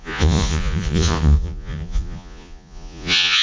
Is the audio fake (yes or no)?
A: yes